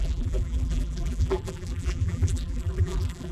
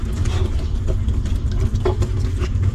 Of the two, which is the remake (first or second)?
first